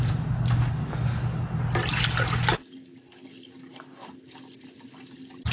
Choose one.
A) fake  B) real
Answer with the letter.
B